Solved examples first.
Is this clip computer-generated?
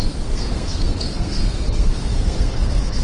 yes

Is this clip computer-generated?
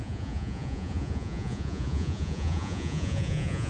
yes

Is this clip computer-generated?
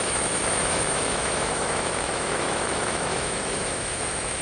yes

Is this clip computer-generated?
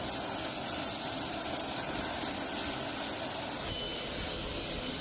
no